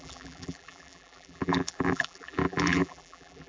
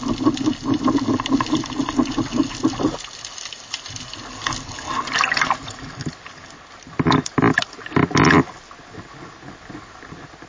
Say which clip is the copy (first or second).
first